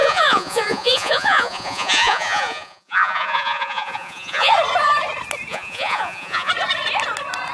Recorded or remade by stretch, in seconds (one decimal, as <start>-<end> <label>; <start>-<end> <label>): 0.0-4.5 remade; 4.5-5.5 recorded; 5.5-6.5 remade; 6.5-7.5 recorded